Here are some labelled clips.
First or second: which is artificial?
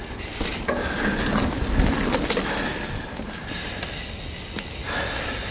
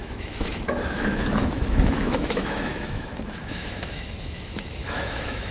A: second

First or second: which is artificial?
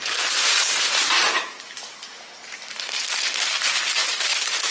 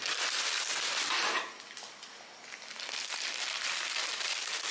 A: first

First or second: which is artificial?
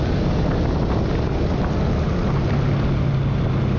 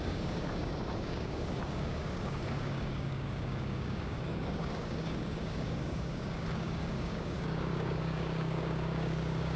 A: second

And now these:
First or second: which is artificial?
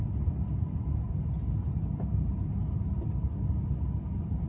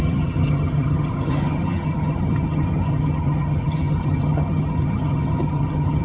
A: second